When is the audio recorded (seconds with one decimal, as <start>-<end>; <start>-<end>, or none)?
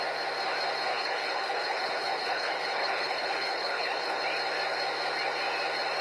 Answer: 0.0-0.9; 4.2-6.0